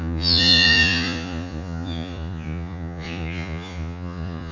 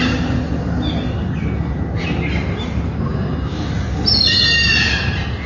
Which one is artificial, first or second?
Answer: first